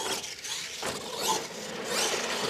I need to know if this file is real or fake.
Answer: real